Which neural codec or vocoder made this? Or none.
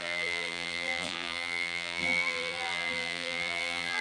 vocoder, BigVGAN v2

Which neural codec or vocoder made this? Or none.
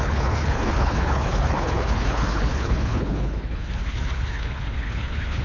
codec, HILCodec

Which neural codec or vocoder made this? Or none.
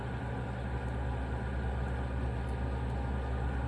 none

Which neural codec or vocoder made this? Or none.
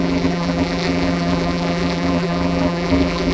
vocoder, BigVGAN v2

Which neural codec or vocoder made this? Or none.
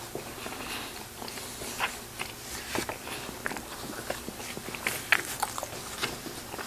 none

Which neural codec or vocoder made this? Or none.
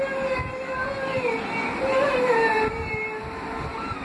none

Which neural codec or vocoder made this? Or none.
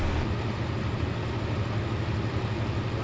none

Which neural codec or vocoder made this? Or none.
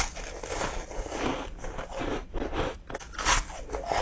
none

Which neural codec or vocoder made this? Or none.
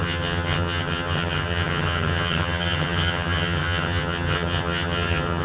vocoder, HiFi-GAN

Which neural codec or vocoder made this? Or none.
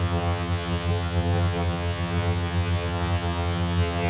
vocoder, HiFi-GAN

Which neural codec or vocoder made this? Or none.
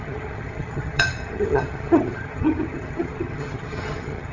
vocoder, HiFi-GAN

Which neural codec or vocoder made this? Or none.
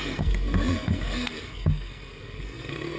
codec, SNAC